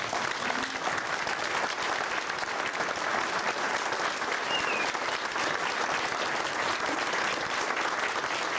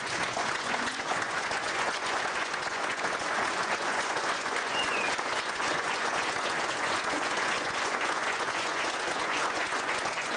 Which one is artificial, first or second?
second